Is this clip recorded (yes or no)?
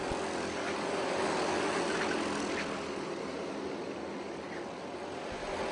yes